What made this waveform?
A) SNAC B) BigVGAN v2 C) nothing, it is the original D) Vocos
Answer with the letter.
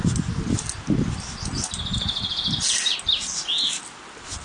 C